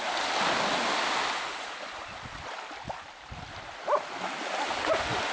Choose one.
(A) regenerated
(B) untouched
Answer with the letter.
B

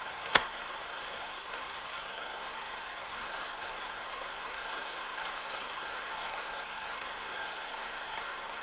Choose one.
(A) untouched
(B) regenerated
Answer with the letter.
B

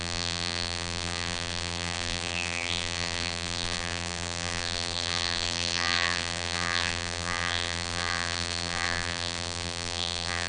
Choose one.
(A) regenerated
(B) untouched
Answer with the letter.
A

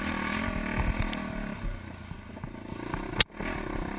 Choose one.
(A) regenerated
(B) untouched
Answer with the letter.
B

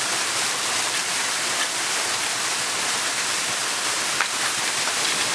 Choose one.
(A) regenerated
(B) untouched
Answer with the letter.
A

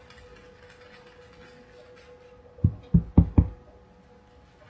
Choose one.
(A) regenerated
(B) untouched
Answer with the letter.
B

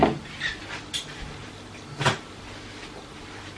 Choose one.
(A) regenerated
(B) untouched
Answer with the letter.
B